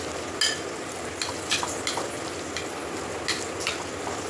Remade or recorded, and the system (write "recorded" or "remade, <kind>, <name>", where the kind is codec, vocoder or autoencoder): recorded